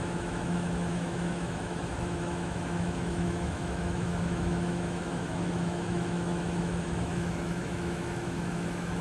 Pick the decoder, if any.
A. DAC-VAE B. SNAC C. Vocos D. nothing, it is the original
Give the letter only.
A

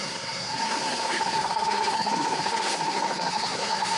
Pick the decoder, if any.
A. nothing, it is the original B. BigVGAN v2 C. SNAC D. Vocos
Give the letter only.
C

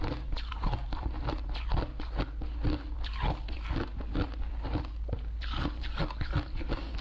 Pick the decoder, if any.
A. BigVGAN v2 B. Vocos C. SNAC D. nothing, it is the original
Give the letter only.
D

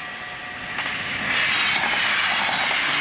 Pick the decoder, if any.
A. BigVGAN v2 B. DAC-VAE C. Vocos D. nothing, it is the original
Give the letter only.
D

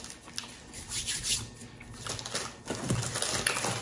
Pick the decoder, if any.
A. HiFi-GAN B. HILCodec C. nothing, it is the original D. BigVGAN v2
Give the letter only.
C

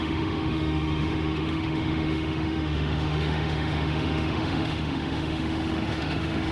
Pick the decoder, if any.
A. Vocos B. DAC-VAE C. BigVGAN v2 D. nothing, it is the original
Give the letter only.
B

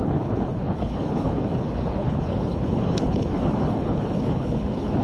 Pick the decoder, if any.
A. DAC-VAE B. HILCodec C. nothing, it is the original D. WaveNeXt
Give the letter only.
B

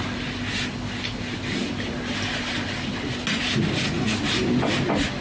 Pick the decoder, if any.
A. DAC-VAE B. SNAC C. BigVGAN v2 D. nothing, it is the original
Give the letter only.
D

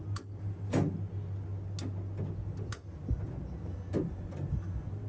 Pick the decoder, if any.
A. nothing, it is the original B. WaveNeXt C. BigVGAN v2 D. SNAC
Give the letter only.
A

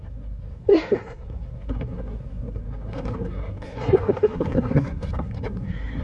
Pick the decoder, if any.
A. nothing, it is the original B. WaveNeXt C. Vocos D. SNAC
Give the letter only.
D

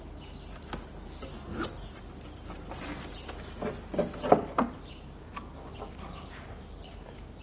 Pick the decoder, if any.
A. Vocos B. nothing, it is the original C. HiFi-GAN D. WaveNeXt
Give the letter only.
B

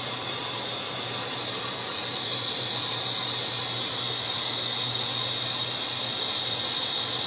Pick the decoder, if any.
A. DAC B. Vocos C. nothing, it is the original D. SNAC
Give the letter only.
C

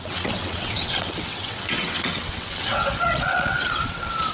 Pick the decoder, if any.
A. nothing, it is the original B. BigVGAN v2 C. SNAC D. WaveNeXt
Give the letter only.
D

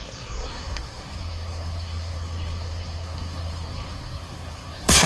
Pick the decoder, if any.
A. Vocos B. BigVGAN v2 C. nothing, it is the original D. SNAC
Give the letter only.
D